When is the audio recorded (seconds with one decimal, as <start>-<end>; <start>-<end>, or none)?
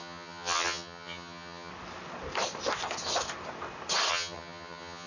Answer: 1.7-4.1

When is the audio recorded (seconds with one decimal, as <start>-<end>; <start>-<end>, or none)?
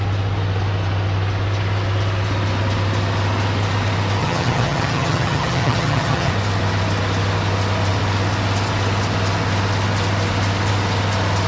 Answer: 0.0-4.2; 6.3-11.5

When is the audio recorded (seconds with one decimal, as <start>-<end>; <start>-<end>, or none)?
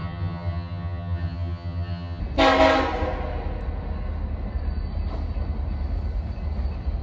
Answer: 2.2-7.0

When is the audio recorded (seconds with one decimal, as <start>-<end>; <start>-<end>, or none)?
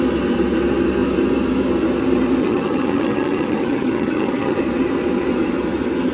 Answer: 0.0-2.4; 4.6-6.1